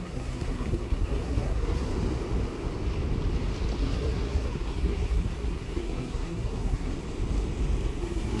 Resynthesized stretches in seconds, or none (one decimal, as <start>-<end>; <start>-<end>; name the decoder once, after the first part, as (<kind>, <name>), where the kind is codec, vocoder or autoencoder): 0.0-1.9 (codec, SNAC); 3.8-6.9; 8.0-8.4